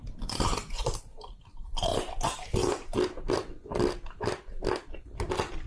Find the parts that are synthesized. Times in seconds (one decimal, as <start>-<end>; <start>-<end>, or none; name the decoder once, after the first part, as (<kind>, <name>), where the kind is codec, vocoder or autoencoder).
0.0-1.9 (vocoder, BigVGAN v2); 5.3-5.7